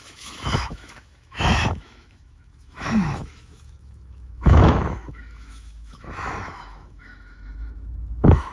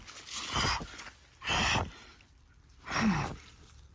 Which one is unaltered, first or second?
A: second